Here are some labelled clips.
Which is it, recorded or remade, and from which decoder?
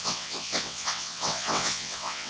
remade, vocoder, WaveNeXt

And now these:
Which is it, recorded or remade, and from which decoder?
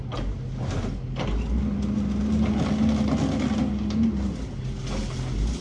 recorded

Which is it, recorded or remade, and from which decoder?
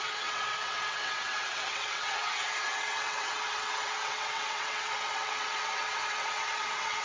remade, vocoder, WaveNeXt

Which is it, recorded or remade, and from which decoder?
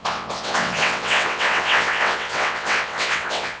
remade, vocoder, WaveNeXt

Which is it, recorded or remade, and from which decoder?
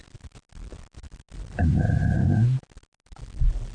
recorded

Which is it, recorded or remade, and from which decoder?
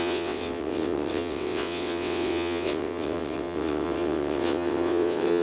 remade, vocoder, WaveNeXt